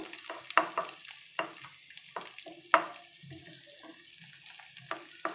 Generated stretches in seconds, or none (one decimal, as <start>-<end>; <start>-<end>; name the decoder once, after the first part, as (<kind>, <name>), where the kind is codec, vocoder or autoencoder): none